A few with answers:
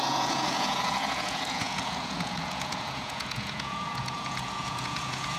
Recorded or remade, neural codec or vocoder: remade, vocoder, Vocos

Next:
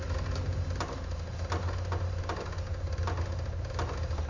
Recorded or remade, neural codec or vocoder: recorded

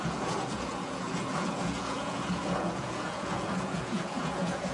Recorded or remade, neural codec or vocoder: remade, vocoder, Vocos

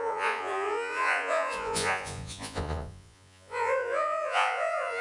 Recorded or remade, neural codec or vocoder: remade, vocoder, Vocos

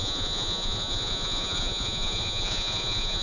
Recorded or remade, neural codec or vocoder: remade, vocoder, Vocos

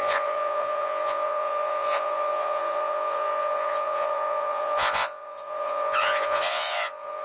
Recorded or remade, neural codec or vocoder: remade, vocoder, Vocos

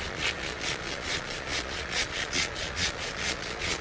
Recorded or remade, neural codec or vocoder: remade, vocoder, Vocos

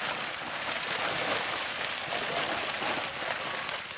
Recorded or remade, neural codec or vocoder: recorded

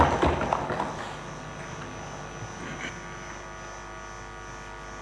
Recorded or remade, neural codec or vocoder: recorded